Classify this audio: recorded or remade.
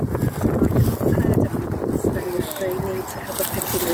recorded